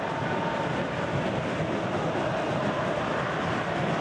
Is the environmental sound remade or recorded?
recorded